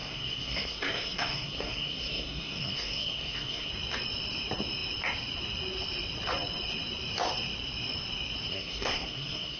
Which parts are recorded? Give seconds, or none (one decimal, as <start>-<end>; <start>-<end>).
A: 3.7-8.5